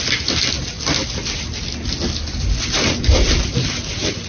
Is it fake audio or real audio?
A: real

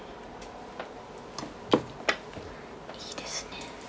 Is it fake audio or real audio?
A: real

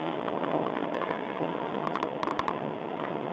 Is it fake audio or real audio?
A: fake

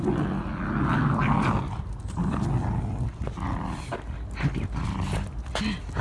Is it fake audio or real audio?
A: real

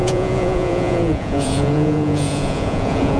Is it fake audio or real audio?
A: fake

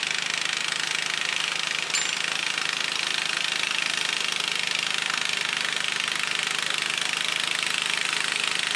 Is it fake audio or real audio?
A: real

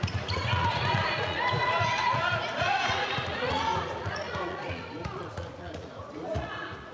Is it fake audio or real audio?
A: fake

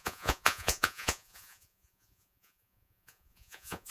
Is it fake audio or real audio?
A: fake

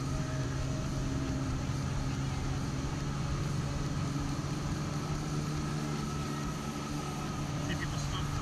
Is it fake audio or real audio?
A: real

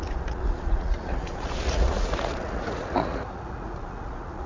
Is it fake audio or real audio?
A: fake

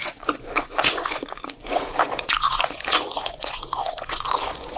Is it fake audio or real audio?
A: fake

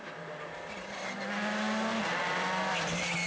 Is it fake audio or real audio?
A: real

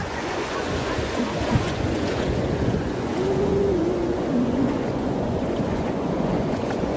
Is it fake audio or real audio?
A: fake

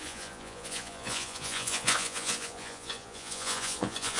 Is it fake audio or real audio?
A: fake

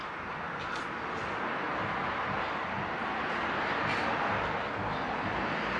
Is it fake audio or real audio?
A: real